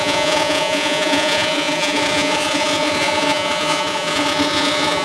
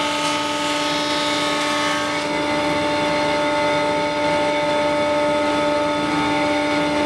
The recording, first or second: second